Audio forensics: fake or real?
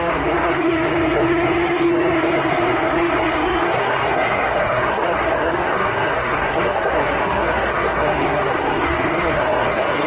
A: fake